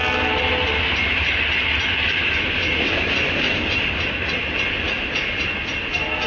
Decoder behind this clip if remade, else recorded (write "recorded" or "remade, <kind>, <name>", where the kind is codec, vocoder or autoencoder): recorded